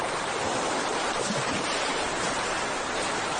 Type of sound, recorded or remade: remade